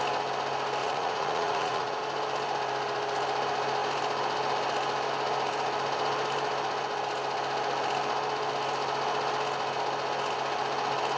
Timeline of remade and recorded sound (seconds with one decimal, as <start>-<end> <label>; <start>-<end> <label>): 0.0-0.8 recorded; 0.8-2.0 remade; 2.0-11.2 recorded